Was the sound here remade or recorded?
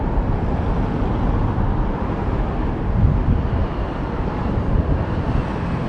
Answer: remade